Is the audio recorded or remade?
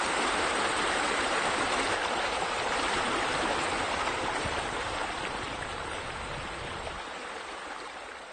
remade